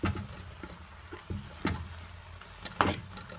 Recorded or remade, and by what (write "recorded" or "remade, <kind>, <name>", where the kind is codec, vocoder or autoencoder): recorded